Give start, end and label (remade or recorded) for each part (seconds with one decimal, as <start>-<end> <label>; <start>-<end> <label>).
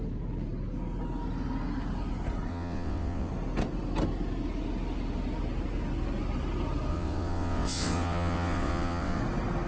0.0-2.5 recorded; 2.5-3.3 remade; 3.3-6.9 recorded; 6.9-9.2 remade; 9.2-9.7 recorded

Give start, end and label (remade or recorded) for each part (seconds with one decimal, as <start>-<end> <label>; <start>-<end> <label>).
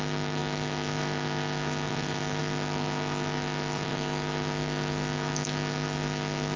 0.0-6.6 recorded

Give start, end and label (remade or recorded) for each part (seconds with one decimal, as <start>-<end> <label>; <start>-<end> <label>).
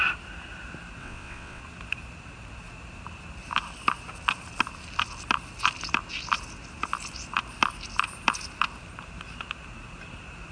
0.0-1.0 recorded; 1.0-1.6 remade; 1.6-10.5 recorded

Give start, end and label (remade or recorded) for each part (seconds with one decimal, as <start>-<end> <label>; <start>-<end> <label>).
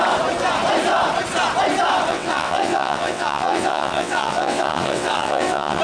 0.0-2.1 recorded; 2.1-5.8 remade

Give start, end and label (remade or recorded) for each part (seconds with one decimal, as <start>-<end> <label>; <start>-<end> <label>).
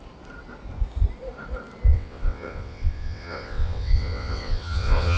0.0-1.9 recorded; 1.9-5.2 remade